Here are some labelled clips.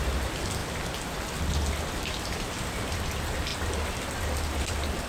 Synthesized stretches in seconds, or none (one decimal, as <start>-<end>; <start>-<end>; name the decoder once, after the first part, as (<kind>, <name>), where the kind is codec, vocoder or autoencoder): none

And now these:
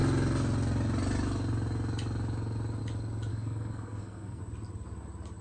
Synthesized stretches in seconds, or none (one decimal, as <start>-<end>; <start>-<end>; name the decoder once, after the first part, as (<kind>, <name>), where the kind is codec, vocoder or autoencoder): 3.3-4.4 (codec, SNAC)

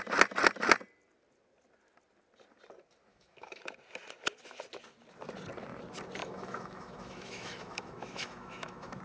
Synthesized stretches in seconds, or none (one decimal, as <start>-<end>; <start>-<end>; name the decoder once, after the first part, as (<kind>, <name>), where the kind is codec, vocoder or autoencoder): 3.1-3.6 (autoencoder, DAC-VAE); 6.2-9.0

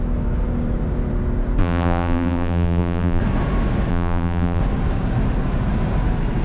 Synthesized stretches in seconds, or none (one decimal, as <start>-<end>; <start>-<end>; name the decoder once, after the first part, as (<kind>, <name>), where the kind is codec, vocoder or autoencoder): 1.6-3.2 (vocoder, BigVGAN v2); 3.9-4.6

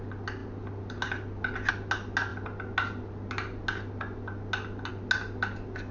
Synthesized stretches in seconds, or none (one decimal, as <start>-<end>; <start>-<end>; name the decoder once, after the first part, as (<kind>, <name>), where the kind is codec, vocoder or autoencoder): none